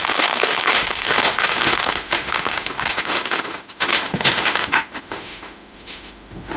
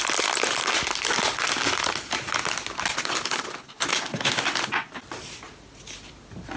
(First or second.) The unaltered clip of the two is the second